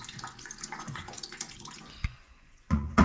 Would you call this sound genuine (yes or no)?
no